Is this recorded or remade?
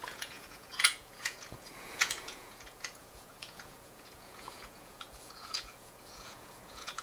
remade